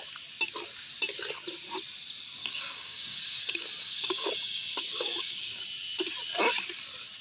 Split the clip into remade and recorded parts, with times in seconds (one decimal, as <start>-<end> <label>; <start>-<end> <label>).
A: 0.0-2.4 recorded; 2.4-5.6 remade; 5.6-7.2 recorded